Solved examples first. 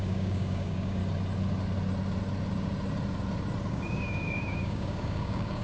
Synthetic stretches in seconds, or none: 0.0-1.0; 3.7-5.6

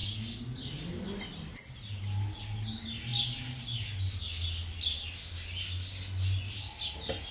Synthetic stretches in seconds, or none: none

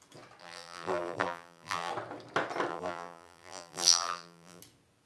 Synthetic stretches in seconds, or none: 0.4-1.9; 2.7-4.6

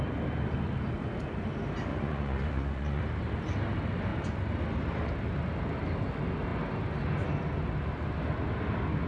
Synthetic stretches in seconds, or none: 1.9-3.0

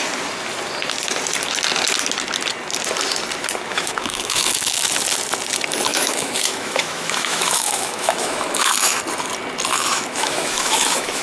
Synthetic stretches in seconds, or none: 3.7-4.9; 5.9-9.0; 9.7-11.2